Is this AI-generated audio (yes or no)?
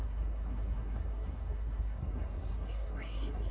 yes